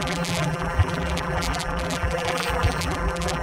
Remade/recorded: remade